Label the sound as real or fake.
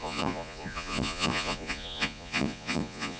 fake